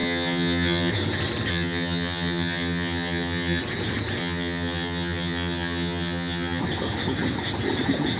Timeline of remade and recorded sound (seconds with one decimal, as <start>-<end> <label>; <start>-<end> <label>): 0.0-0.9 remade; 0.9-1.5 recorded; 1.5-3.6 remade; 3.6-4.2 recorded; 4.2-6.6 remade; 6.6-8.2 recorded